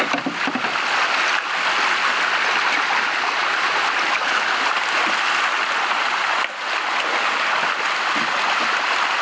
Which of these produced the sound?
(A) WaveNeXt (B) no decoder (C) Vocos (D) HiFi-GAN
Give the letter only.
B